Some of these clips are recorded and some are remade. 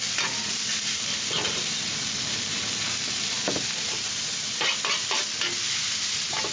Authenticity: remade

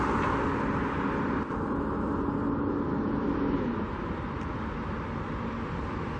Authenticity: recorded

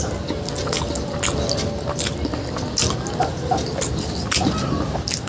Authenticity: recorded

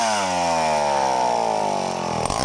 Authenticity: recorded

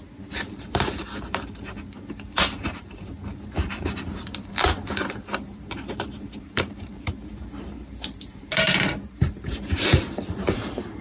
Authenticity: remade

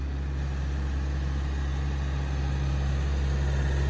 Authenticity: recorded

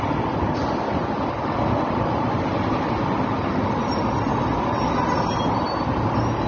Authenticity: recorded